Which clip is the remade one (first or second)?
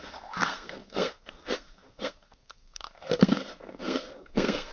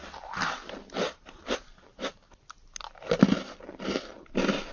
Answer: first